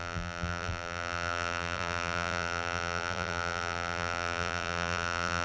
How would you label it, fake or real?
fake